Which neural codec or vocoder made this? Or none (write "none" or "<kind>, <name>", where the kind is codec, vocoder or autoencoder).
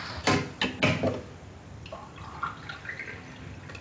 none